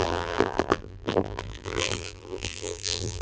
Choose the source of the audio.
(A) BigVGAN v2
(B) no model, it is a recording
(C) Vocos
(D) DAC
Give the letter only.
A